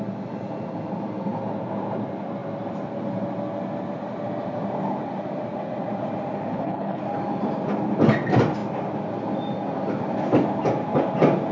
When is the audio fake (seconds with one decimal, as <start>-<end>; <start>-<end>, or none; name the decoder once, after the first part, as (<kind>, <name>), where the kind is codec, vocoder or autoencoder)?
6.5-7.0 (codec, HILCodec)